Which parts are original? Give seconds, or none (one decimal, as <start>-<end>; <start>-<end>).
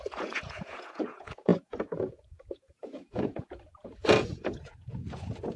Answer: none